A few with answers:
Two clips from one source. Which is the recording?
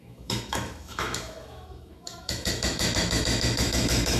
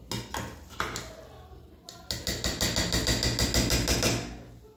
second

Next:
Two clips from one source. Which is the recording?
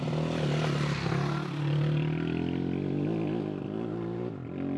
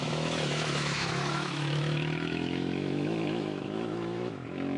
first